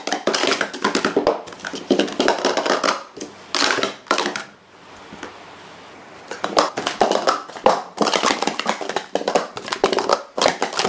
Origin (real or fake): real